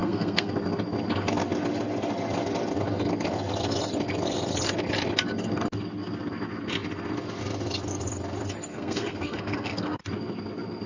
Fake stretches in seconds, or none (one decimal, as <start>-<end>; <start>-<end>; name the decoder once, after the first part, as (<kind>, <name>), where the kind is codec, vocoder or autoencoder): 0.0-0.5 (codec, SNAC); 8.7-10.0